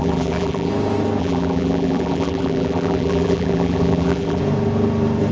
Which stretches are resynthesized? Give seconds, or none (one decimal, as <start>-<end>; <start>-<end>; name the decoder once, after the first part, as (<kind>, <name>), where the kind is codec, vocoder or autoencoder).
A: 0.0-0.7 (vocoder, BigVGAN v2); 1.2-4.4

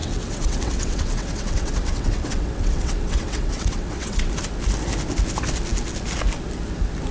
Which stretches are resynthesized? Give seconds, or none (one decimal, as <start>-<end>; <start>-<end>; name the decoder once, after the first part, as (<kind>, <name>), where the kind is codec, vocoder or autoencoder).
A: 0.0-4.3 (vocoder, WaveNeXt)